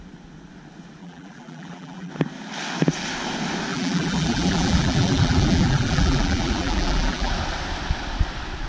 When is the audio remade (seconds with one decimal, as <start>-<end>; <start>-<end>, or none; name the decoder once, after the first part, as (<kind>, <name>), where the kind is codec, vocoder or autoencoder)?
1.0-2.1 (vocoder, BigVGAN v2); 3.7-7.3